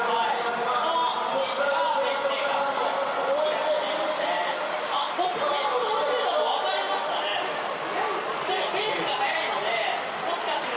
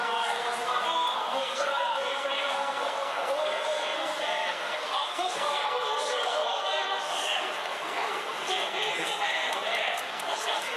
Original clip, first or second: first